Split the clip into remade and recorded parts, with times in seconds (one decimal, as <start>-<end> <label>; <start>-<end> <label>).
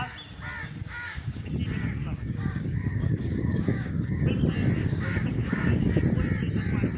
0.0-0.8 recorded; 0.8-1.5 remade; 1.5-2.0 recorded; 2.0-4.2 remade; 4.2-4.8 recorded; 4.8-5.9 remade; 5.9-7.0 recorded